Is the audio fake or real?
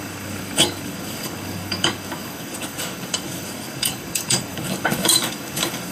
fake